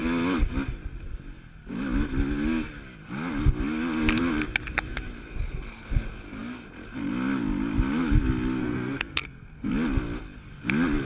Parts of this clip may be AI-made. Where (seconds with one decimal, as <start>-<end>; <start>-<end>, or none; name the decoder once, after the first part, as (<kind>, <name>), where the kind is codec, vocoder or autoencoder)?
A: 8.6-9.7 (codec, SNAC)